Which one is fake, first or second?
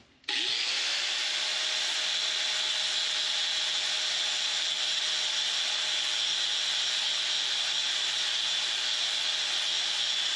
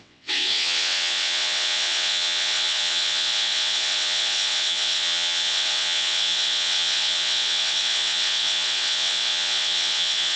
second